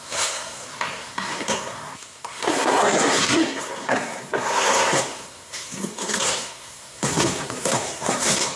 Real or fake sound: fake